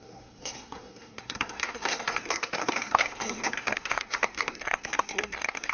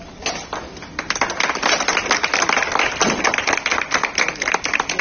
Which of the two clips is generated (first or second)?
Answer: first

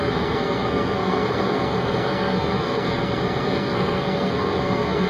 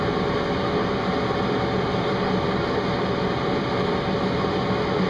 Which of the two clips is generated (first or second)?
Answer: first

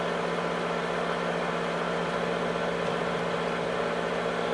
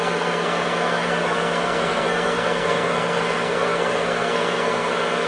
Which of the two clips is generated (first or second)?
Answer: second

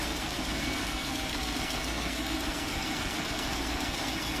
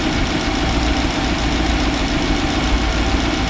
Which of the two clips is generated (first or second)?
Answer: first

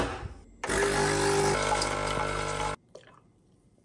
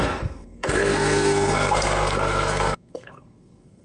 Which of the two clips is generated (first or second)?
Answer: second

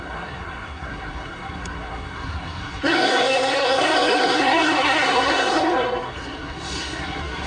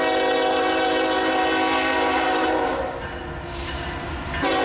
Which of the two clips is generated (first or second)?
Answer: first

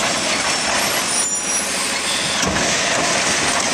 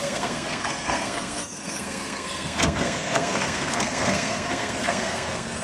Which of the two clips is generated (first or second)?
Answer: second